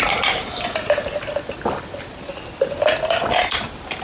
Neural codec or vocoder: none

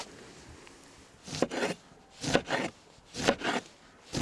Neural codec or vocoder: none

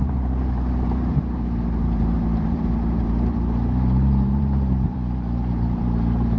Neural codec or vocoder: vocoder, BigVGAN v2